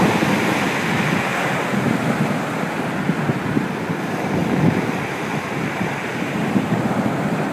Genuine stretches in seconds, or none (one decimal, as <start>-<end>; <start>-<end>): 0.0-7.5